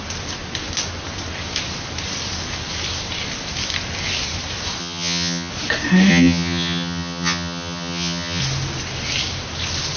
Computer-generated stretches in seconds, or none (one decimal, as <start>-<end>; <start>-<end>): 4.8-5.5; 6.1-8.4